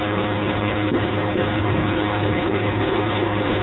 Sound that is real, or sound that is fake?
fake